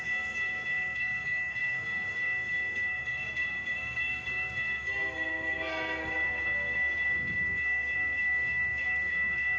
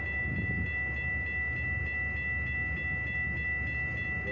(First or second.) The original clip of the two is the second